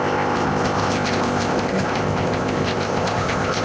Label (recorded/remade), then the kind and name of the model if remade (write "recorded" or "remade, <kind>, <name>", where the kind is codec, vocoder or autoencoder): remade, codec, ZipCodec